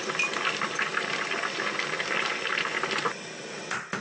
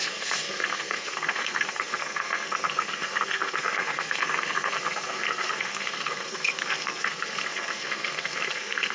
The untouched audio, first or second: first